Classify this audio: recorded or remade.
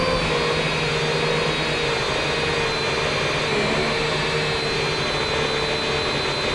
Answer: recorded